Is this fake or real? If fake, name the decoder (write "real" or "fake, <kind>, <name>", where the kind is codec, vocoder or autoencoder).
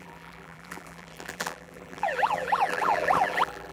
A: fake, vocoder, BigVGAN v2